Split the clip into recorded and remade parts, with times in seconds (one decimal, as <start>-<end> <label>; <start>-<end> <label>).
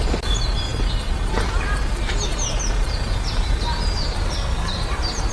0.0-5.3 recorded